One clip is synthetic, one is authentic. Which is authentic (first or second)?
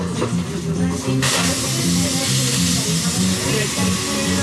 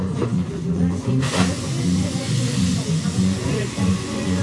first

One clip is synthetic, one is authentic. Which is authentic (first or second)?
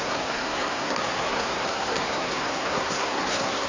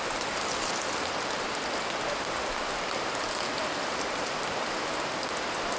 second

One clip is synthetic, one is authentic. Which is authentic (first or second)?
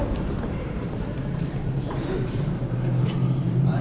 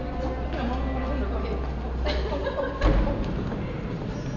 second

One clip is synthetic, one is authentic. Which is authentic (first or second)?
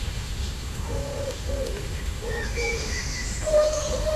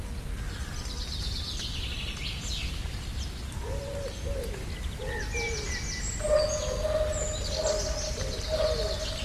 second